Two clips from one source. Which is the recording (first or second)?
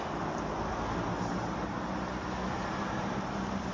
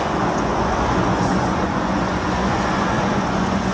first